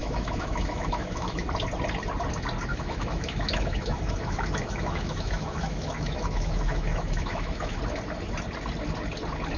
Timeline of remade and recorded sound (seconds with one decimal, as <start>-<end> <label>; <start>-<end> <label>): 0.0-1.4 remade; 1.4-2.7 recorded; 2.7-7.8 remade; 7.8-9.6 recorded